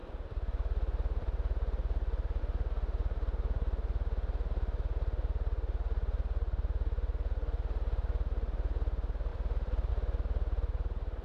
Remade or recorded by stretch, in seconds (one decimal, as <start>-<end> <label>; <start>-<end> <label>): 0.0-2.4 remade; 2.4-9.3 recorded; 9.3-9.9 remade; 9.9-11.2 recorded